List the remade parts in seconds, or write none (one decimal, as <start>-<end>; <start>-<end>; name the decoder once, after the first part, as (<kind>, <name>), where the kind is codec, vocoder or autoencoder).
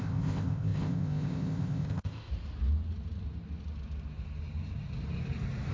0.0-2.3 (codec, ZipCodec)